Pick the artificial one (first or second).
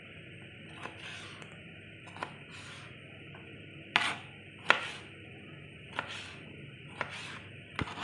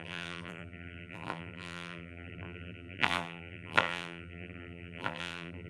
second